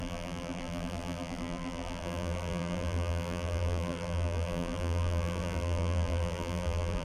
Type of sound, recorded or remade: remade